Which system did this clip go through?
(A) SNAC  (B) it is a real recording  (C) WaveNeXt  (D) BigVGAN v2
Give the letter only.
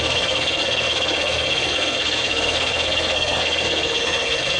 A